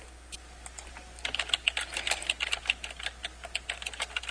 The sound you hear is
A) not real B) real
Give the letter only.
B